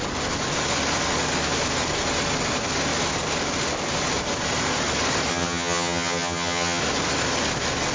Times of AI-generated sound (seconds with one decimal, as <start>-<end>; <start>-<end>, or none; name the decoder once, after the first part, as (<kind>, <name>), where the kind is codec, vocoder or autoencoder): 5.3-6.8 (vocoder, HiFi-GAN)